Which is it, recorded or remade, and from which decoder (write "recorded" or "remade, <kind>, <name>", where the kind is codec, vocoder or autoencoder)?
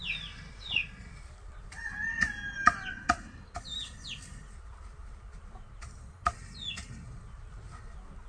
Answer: recorded